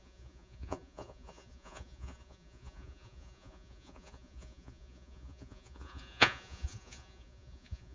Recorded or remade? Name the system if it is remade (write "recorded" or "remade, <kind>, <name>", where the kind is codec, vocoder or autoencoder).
remade, vocoder, Vocos